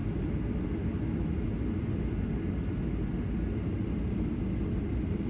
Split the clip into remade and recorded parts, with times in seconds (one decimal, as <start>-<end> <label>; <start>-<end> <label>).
0.0-5.3 recorded